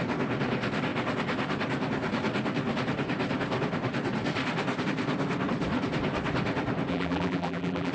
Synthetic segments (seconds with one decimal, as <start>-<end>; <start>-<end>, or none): 6.9-7.9